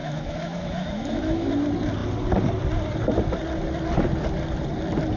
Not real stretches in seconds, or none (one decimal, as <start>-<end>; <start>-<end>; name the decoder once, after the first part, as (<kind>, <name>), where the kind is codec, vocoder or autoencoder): 0.0-1.5 (autoencoder, DAC-VAE)